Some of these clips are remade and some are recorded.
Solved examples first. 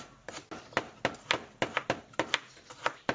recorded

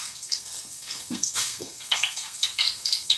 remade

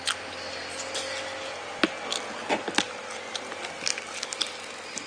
recorded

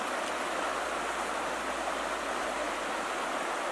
recorded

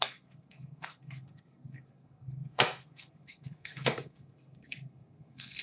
remade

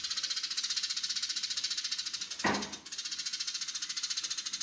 recorded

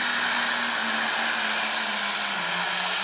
recorded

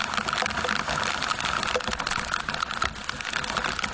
recorded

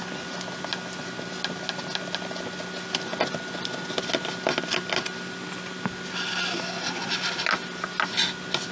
recorded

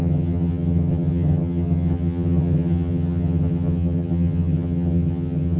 remade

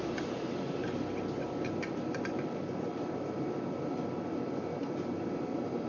recorded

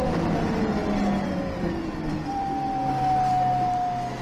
recorded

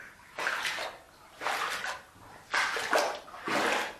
recorded